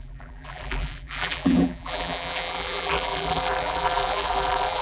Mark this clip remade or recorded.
remade